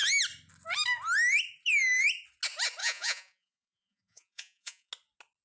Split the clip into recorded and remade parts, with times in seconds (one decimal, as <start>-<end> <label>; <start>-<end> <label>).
0.0-2.8 recorded; 2.8-4.9 remade; 4.9-5.4 recorded